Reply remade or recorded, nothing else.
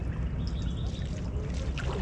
recorded